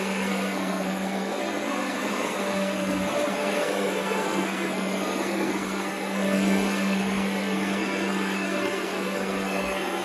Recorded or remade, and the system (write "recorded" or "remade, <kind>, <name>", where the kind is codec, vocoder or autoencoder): remade, codec, SNAC